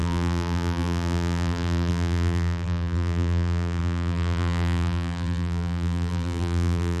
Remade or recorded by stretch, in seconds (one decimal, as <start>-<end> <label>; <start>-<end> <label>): 0.0-7.0 remade